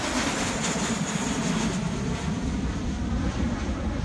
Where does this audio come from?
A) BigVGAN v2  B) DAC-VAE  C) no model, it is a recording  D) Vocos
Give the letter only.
C